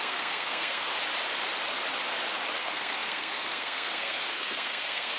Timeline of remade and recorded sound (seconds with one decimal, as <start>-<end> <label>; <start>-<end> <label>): 0.0-0.9 remade; 0.9-2.6 recorded; 2.6-5.2 remade